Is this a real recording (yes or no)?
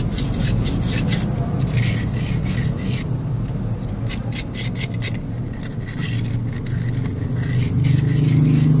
yes